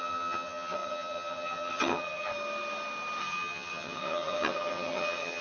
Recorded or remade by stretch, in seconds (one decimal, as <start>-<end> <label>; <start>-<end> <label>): 0.0-2.3 remade; 2.3-3.2 recorded; 3.2-5.4 remade